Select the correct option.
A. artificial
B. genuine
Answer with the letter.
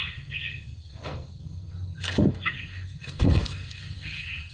A